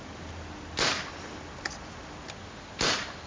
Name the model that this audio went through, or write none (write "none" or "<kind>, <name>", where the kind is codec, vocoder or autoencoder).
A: none